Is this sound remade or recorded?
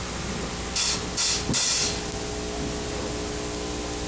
recorded